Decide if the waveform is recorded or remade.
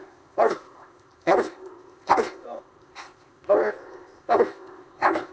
remade